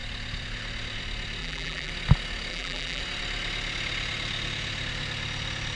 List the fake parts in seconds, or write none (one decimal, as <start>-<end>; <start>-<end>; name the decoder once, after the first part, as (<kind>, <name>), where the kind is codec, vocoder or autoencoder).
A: 1.4-1.9 (vocoder, BigVGAN v2); 2.5-3.0